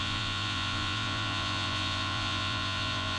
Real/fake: fake